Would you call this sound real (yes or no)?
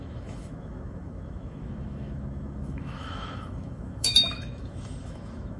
no